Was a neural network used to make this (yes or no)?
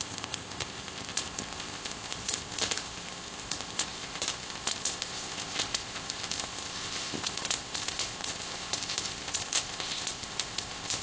yes